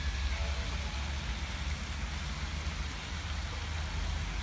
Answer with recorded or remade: recorded